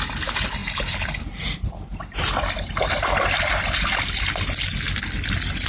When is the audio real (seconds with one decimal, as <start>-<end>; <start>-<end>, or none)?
0.0-0.6; 1.3-1.9; 2.7-5.7